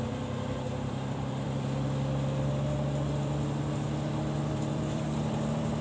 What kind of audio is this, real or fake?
fake